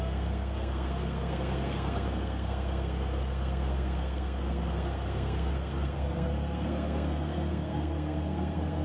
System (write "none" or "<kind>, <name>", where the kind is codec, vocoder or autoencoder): codec, SNAC